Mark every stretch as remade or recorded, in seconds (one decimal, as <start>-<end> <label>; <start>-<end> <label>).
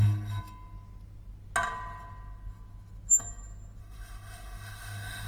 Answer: 0.0-3.8 recorded; 3.8-5.3 remade